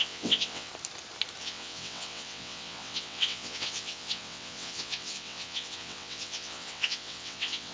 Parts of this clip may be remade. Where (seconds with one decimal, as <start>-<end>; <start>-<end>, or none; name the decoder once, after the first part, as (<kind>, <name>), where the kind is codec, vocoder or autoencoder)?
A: 0.0-0.7 (vocoder, WaveNeXt); 1.4-7.7